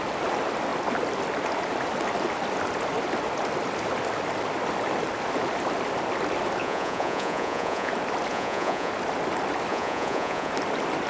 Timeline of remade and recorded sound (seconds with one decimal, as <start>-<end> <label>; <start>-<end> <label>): 0.0-6.6 recorded; 6.6-7.9 remade; 7.9-8.3 recorded; 8.3-8.9 remade; 8.9-9.7 recorded; 9.7-10.5 remade; 10.5-11.1 recorded